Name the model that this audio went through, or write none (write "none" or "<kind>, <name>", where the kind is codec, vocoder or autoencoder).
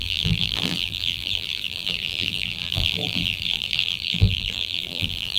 vocoder, BigVGAN v2